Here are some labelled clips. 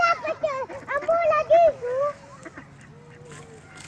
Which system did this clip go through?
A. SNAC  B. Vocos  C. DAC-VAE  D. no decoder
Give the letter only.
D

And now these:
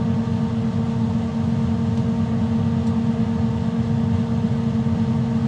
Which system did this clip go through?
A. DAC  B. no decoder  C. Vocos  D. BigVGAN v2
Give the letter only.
B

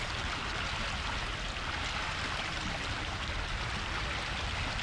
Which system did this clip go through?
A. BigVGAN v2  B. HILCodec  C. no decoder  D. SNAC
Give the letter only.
C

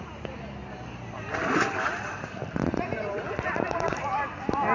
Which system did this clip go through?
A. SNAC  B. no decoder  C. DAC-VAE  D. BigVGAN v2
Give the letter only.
B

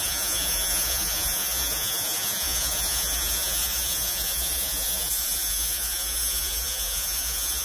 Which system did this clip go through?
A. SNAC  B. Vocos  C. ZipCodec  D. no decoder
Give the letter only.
B